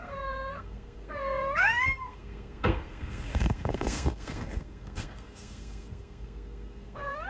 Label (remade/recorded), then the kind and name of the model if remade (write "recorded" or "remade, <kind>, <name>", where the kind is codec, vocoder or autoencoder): remade, codec, SNAC